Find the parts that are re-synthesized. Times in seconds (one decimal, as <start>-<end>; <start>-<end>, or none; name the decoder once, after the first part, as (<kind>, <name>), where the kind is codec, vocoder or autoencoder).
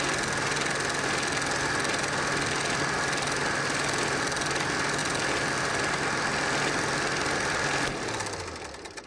none